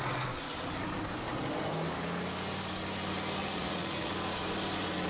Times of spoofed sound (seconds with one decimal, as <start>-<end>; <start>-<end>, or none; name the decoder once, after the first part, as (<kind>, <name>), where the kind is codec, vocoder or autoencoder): 3.4-4.1 (vocoder, Vocos)